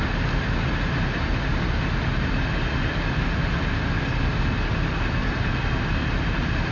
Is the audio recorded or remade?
recorded